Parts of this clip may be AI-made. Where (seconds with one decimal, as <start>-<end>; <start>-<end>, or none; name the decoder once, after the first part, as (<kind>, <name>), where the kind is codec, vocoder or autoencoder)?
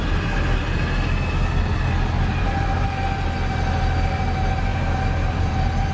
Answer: 2.4-3.0 (vocoder, BigVGAN v2)